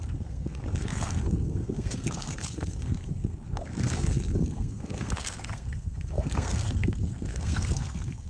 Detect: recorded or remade remade